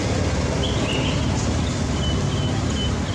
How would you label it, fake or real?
real